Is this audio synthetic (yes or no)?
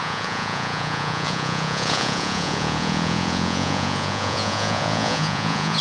yes